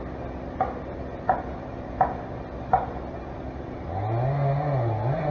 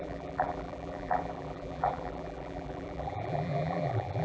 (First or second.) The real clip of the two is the first